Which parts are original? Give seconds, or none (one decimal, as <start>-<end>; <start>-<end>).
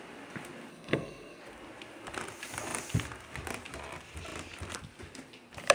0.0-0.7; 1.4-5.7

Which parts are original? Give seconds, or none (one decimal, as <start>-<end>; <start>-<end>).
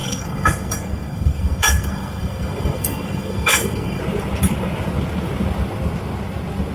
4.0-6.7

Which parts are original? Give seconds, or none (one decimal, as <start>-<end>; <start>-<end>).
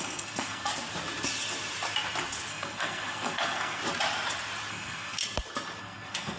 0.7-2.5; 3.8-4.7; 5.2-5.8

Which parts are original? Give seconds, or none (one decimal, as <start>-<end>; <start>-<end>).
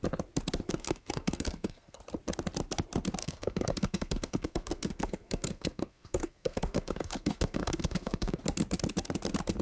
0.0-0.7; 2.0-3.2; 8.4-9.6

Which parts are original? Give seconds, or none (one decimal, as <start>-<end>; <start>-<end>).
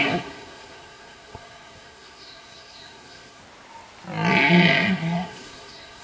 3.4-4.9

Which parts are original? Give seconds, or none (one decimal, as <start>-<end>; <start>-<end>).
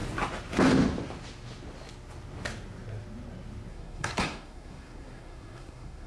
0.0-3.7